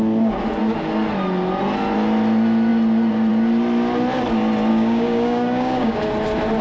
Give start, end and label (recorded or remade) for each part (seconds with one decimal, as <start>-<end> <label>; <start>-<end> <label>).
0.0-4.7 recorded; 4.7-6.0 remade; 6.0-6.6 recorded